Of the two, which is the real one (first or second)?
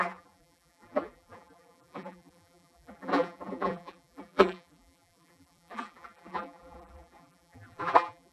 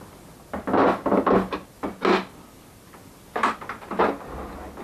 second